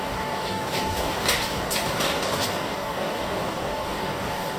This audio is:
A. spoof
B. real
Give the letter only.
A